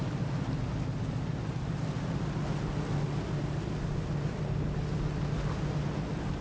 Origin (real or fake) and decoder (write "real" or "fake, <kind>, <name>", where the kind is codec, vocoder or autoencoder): real